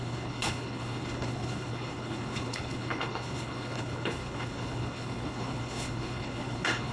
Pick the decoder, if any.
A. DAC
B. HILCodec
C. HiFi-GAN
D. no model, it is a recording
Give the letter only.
B